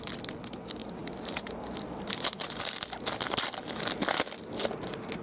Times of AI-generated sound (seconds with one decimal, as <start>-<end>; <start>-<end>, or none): 0.8-2.6